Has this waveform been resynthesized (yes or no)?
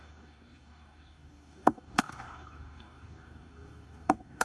yes